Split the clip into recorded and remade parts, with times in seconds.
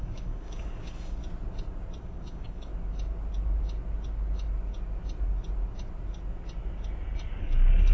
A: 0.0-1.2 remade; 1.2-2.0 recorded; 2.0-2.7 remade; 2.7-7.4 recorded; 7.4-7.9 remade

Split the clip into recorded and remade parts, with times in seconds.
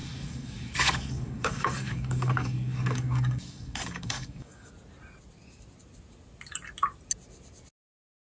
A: 0.0-4.7 remade; 4.7-8.2 recorded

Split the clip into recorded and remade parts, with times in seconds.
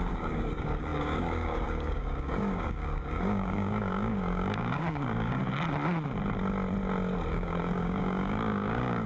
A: 0.0-5.4 remade; 5.4-7.3 recorded; 7.3-9.1 remade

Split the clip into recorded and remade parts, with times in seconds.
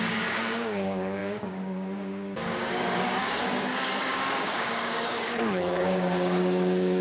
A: 0.0-7.0 remade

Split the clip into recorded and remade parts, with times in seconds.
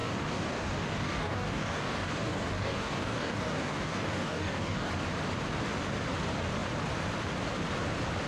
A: 0.0-4.9 remade; 4.9-8.3 recorded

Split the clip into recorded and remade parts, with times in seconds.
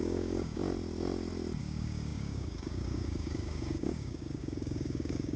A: 0.0-0.6 remade; 0.6-1.6 recorded; 1.6-5.4 remade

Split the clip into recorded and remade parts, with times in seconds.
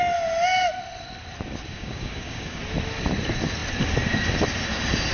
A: 0.0-1.7 recorded; 1.7-2.6 remade; 2.6-5.1 recorded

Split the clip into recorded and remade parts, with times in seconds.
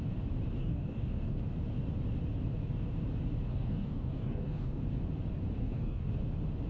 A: 0.0-0.6 recorded; 0.6-1.4 remade; 1.4-3.5 recorded; 3.5-4.8 remade; 4.8-5.6 recorded; 5.6-6.1 remade; 6.1-6.7 recorded